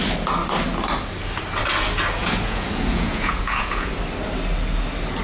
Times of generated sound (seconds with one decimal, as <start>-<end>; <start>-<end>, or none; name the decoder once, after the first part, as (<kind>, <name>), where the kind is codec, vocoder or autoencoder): 2.2-3.9 (vocoder, Vocos)